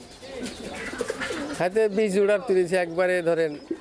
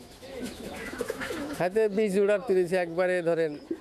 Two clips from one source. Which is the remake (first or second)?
second